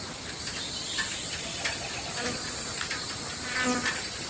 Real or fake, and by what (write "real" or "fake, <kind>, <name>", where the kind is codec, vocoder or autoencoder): real